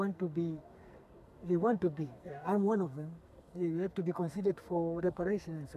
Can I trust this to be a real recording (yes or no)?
no